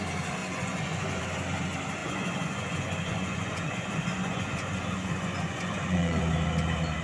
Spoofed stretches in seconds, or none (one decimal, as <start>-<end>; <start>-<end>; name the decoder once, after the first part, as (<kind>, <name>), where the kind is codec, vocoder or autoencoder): 0.4-1.2 (vocoder, Vocos); 2.0-6.2